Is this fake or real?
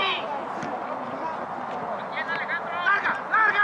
real